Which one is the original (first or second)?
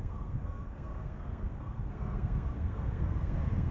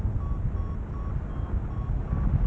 second